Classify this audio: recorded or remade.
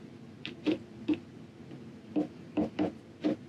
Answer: recorded